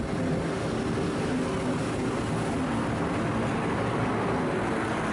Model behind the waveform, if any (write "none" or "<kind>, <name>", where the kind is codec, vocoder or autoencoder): none